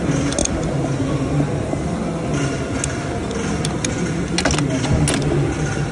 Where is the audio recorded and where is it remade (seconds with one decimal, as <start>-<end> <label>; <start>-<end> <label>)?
0.0-5.9 recorded